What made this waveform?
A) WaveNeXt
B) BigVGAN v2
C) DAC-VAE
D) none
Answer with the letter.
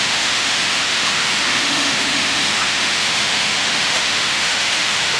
C